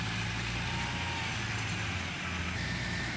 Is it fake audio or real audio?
real